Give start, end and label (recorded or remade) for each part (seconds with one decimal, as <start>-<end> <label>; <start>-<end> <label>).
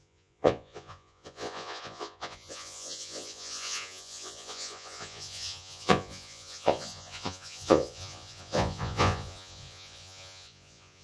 0.0-11.0 remade